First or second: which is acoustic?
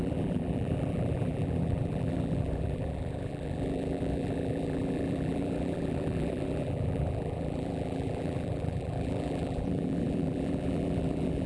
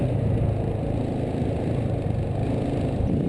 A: second